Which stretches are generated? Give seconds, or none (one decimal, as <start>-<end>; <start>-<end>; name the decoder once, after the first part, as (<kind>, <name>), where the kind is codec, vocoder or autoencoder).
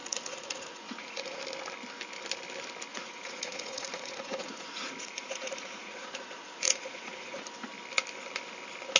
0.0-1.4 (vocoder, Vocos); 2.9-7.4